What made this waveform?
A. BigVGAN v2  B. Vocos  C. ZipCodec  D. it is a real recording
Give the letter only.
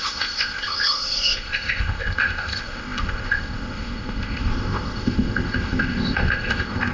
C